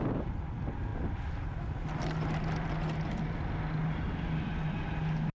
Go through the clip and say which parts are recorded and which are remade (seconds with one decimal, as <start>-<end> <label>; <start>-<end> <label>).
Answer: 0.0-5.3 recorded